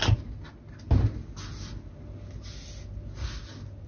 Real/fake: real